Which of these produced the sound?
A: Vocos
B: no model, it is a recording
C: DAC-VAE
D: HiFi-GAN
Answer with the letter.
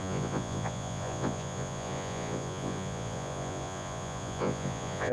A